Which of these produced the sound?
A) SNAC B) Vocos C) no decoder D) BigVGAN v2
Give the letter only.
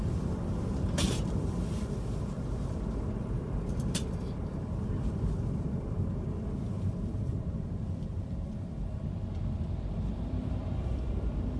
D